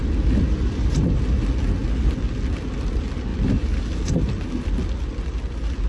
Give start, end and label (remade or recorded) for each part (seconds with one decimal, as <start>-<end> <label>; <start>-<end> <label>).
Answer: 0.0-5.9 recorded